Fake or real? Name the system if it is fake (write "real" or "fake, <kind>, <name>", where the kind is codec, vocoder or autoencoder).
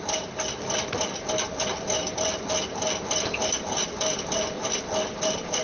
real